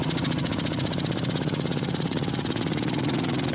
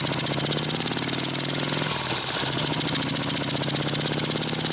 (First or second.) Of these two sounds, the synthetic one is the first